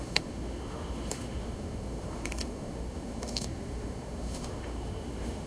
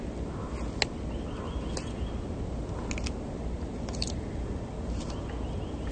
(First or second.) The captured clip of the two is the second